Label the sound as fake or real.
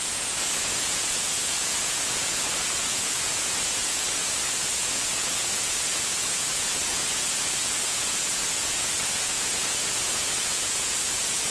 fake